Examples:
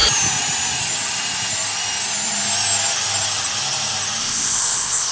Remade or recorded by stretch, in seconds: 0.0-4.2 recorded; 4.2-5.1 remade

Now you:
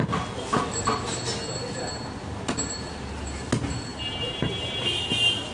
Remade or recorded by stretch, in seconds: 0.0-5.5 recorded